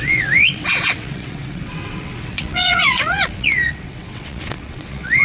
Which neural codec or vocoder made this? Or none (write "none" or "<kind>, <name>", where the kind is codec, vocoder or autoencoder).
vocoder, WaveNeXt